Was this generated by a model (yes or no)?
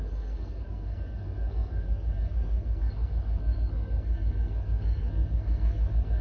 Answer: yes